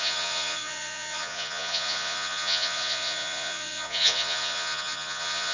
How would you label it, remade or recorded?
remade